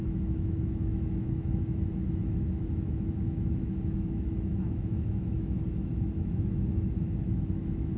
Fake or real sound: fake